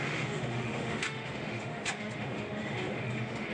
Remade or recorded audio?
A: remade